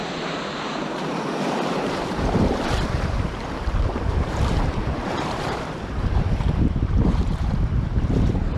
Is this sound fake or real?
fake